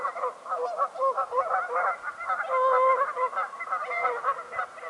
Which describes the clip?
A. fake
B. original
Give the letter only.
B